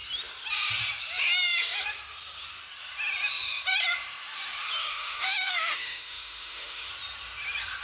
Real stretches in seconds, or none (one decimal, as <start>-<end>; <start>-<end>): 0.0-4.8; 6.9-7.8